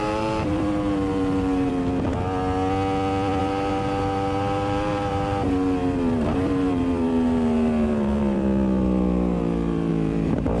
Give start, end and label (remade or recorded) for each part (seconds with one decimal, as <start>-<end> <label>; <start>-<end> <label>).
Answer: 0.0-1.7 remade; 1.7-3.4 recorded; 3.4-10.6 remade